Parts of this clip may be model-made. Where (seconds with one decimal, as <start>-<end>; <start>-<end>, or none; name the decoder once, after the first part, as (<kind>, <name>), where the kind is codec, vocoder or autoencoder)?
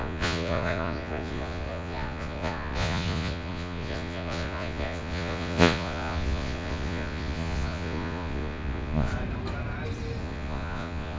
0.0-9.1 (vocoder, Vocos); 10.2-11.2